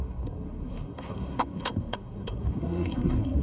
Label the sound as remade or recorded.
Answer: remade